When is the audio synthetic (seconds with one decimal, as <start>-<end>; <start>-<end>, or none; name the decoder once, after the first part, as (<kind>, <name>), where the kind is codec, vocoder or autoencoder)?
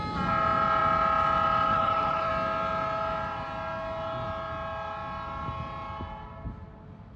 1.7-2.3 (codec, HILCodec)